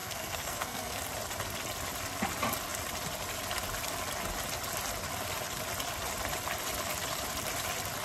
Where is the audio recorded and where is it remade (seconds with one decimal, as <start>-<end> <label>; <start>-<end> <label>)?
0.0-1.0 remade; 1.0-8.0 recorded